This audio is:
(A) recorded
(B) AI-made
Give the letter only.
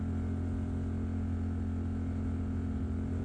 A